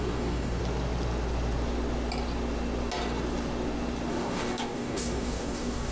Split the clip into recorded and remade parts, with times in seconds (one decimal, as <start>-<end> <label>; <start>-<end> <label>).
0.0-0.6 remade; 0.6-4.1 recorded; 4.1-5.9 remade